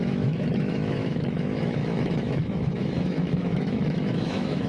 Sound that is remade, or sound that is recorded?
remade